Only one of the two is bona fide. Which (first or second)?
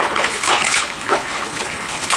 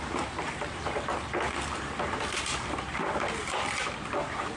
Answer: second